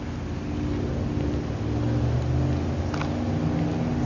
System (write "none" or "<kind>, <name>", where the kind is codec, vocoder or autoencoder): none